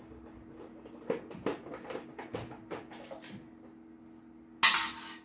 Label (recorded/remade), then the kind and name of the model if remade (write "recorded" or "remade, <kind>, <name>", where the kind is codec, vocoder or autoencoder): recorded